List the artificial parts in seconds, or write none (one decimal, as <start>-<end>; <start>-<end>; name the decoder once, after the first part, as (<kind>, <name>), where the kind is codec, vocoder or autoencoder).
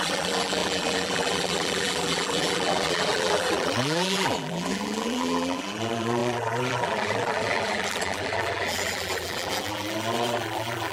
0.0-10.9 (vocoder, BigVGAN v2)